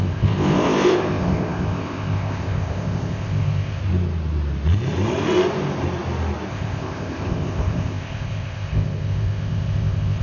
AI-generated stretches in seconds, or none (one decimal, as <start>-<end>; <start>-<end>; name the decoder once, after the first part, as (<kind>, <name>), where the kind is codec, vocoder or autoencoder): 0.0-3.8 (codec, ZipCodec); 6.5-10.2